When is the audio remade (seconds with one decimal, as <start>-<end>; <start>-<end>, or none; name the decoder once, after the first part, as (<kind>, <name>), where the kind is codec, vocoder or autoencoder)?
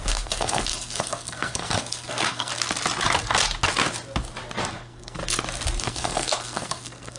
0.0-2.5 (codec, SNAC); 4.7-5.2; 5.8-7.2